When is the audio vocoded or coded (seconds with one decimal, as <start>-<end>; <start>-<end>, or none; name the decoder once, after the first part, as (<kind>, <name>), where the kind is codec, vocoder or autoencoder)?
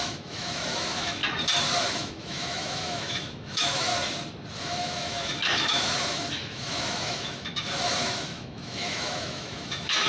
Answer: 0.0-1.2 (autoencoder, DAC-VAE); 1.9-3.9; 4.6-10.1